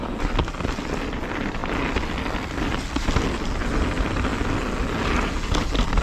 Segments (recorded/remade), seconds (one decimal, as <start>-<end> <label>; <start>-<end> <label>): 0.0-6.0 recorded

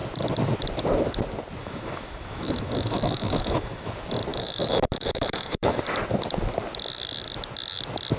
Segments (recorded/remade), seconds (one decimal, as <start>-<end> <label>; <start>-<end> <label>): 0.0-1.6 recorded; 1.6-3.9 remade; 3.9-4.3 recorded; 4.3-5.8 remade; 5.8-8.2 recorded

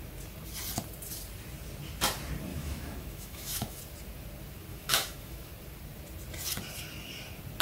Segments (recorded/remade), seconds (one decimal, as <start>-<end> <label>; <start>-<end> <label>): 0.0-2.5 recorded; 2.5-3.8 remade; 3.8-4.7 recorded; 4.7-5.5 remade; 5.5-7.6 recorded

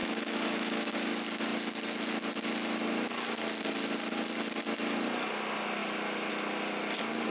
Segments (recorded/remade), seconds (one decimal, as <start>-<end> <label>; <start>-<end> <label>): 0.0-1.1 remade; 1.1-7.3 recorded

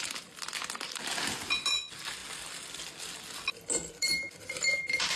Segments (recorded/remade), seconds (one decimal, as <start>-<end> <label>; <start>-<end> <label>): 0.0-5.2 recorded

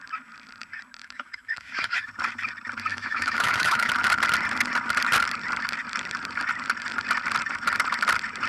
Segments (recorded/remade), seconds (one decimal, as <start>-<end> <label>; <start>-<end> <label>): 0.0-1.0 recorded; 1.0-2.1 remade; 2.1-2.9 recorded; 2.9-3.9 remade; 3.9-8.5 recorded